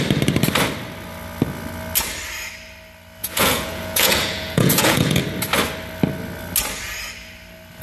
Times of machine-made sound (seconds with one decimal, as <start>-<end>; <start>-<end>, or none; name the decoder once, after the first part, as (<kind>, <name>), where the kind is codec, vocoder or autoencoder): 3.2-5.2 (vocoder, Vocos)